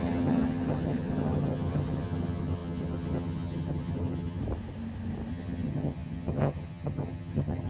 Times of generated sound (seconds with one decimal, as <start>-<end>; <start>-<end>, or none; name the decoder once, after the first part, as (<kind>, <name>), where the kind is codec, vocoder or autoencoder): 0.0-4.4 (vocoder, HiFi-GAN); 5.3-7.7